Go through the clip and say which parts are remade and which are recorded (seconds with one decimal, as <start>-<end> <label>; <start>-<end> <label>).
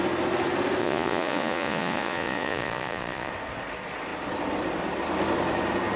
0.0-0.8 recorded; 0.8-3.3 remade; 3.3-6.0 recorded